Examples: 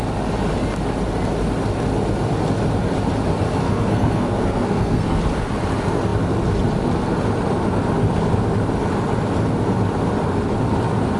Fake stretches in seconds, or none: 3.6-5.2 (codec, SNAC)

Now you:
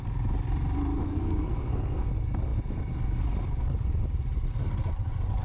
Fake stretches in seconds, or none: 1.1-2.1 (codec, SNAC)

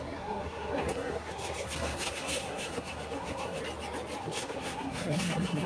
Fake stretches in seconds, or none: 0.0-3.6 (codec, SNAC); 4.2-5.7

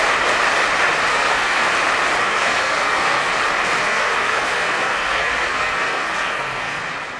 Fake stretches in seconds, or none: 1.1-1.7 (codec, SNAC); 2.2-3.3; 3.8-6.8

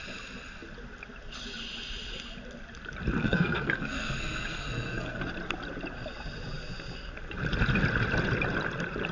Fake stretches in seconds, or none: 3.2-5.2 (codec, SNAC)

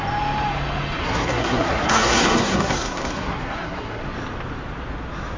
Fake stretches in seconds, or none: 1.0-4.0 (codec, SNAC)